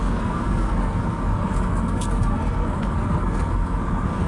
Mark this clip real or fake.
fake